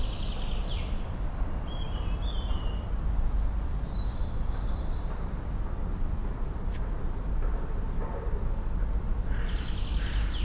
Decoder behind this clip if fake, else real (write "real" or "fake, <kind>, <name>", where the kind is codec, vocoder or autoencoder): real